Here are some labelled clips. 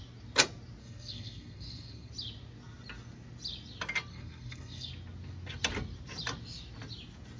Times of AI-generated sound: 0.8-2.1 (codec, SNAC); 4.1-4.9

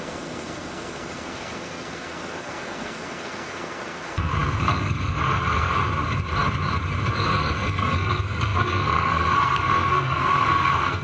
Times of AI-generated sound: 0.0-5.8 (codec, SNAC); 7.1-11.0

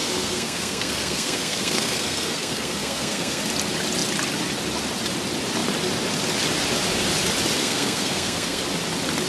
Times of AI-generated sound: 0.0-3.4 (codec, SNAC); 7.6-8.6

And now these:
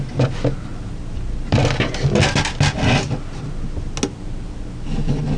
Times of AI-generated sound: none

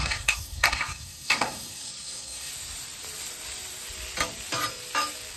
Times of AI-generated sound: 0.0-2.5 (codec, SNAC)

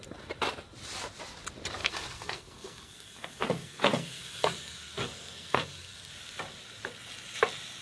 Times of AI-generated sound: 1.8-6.1 (codec, SNAC)

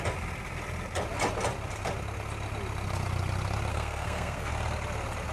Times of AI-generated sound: 3.7-4.5 (codec, SNAC)

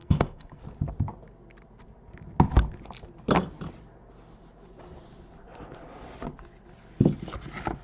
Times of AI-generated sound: 0.0-0.6 (codec, SNAC)